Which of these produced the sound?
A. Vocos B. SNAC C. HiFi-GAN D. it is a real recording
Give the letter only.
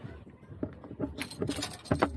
D